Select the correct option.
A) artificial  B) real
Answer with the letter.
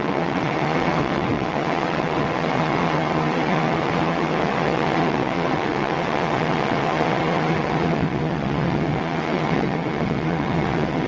A